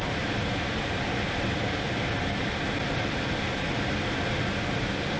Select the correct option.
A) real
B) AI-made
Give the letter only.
A